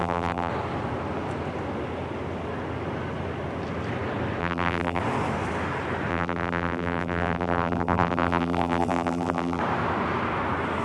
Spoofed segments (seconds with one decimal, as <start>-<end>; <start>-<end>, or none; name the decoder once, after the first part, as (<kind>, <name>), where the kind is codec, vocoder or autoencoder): 0.0-0.5 (vocoder, BigVGAN v2); 4.4-5.0; 6.1-9.6